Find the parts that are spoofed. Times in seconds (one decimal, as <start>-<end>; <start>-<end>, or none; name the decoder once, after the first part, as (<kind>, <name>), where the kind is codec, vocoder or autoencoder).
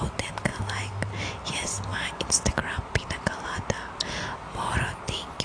none